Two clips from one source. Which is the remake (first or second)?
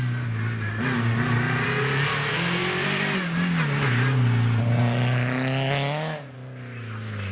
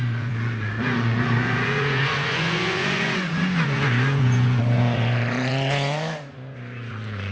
second